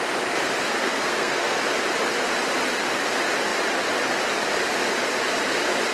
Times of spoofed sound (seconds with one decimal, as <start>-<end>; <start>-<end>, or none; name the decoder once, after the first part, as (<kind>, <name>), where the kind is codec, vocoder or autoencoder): 0.7-1.6 (codec, SNAC)